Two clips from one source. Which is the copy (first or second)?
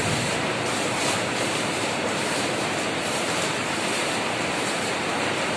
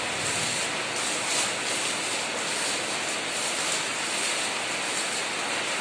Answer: first